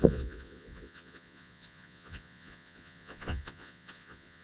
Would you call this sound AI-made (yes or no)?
yes